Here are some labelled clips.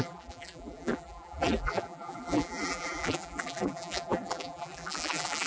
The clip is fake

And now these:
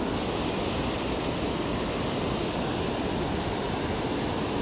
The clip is real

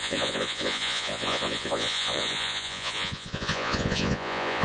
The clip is fake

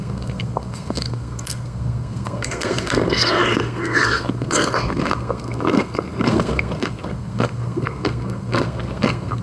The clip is fake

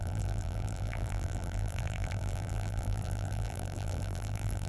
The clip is fake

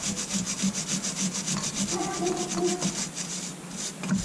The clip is real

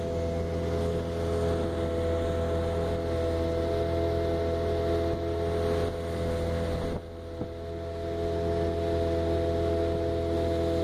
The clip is real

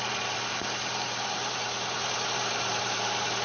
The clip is fake